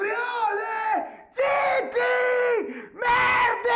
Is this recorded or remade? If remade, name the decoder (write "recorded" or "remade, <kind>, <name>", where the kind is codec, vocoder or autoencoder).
recorded